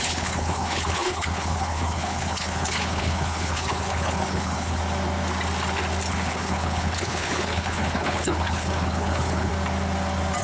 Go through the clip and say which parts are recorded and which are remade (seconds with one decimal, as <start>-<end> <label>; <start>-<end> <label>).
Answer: 0.0-4.8 remade; 4.8-6.1 recorded; 6.1-9.5 remade; 9.5-10.4 recorded